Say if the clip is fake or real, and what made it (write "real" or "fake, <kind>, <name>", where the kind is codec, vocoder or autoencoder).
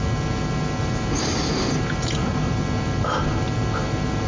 real